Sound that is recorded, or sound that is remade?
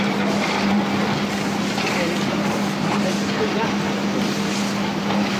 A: recorded